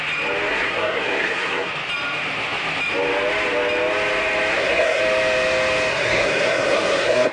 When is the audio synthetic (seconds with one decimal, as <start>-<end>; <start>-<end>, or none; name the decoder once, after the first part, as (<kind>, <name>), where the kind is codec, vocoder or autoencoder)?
0.5-1.7 (codec, SNAC); 4.5-5.0; 5.9-7.3